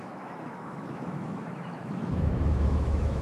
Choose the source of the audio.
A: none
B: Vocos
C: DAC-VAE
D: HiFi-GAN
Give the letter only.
C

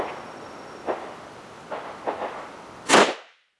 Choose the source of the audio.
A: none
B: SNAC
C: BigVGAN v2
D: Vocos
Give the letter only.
A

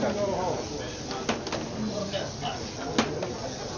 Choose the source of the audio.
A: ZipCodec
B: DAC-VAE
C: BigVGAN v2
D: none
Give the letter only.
D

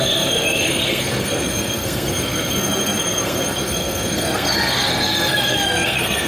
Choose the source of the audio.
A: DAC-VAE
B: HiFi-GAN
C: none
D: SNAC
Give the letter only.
D